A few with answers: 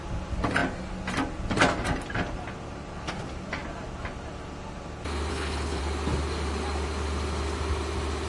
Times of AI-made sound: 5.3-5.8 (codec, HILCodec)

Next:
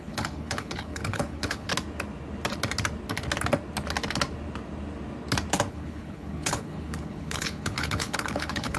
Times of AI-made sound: 0.0-1.7 (codec, HILCodec); 5.7-8.8

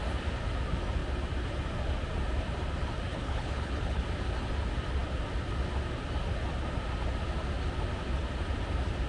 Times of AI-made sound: 3.1-4.0 (codec, HILCodec)